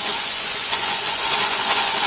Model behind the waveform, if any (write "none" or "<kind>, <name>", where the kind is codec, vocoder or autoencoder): vocoder, Vocos